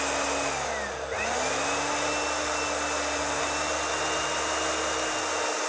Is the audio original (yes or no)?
yes